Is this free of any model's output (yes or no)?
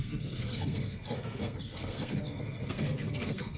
no